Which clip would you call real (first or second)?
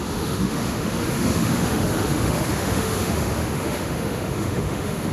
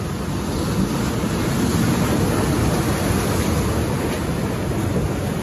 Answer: second